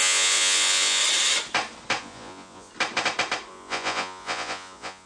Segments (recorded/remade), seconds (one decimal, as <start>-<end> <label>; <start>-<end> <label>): 0.0-1.0 remade; 1.0-2.0 recorded; 2.0-2.7 remade; 2.7-3.5 recorded; 3.5-5.1 remade